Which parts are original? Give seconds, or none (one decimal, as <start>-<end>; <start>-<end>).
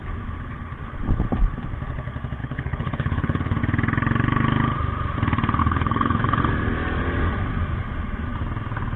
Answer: 0.0-2.4; 3.6-5.6; 6.4-9.0